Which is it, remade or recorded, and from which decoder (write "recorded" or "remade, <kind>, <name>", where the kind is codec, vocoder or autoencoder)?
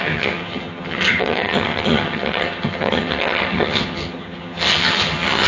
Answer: remade, vocoder, HiFi-GAN